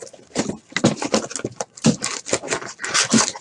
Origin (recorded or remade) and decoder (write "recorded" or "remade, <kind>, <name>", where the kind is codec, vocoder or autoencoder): recorded